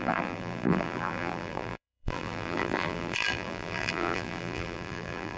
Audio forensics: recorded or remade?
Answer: remade